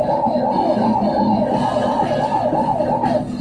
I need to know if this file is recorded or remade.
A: recorded